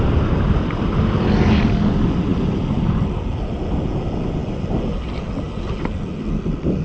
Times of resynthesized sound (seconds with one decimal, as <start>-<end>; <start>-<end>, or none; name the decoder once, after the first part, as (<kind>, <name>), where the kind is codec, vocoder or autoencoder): none